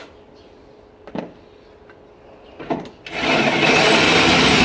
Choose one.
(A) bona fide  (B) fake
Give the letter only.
A